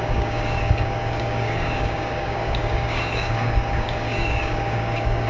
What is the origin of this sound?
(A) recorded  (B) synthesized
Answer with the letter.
B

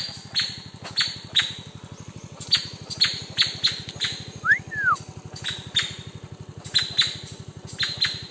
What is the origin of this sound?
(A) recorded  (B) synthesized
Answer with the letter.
A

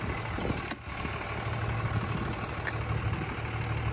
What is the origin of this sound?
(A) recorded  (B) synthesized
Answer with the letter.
A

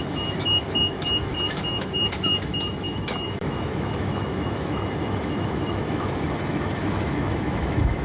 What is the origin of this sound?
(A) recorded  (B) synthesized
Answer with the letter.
B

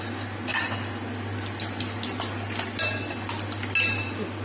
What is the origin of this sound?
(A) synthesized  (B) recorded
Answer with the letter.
B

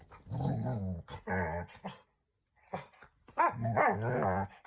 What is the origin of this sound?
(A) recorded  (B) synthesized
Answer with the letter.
A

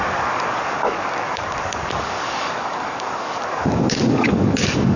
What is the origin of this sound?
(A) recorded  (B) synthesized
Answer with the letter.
B